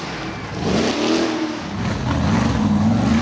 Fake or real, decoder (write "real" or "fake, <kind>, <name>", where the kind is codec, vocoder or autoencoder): real